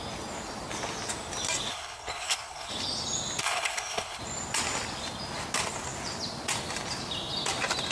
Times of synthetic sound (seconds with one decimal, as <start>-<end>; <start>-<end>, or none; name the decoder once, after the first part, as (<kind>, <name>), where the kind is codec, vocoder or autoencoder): 1.7-2.7 (codec, HILCodec); 3.4-4.2